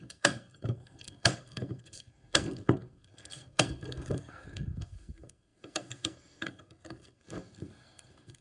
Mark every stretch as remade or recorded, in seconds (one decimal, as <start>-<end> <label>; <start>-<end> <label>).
0.0-8.4 remade